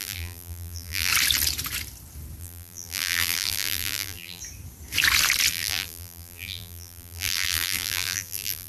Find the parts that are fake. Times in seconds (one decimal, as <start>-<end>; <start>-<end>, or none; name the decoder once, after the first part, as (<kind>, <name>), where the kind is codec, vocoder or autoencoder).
0.0-1.1 (vocoder, BigVGAN v2); 2.4-4.4; 5.5-8.7